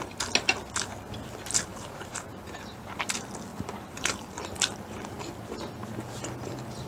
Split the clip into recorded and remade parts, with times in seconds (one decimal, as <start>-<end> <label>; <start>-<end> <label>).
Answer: 0.0-1.7 recorded; 1.7-3.1 remade; 3.1-3.5 recorded; 3.5-4.4 remade; 4.4-6.9 recorded